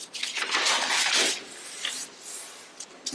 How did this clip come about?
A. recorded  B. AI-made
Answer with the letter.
A